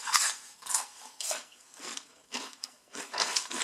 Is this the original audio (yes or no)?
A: no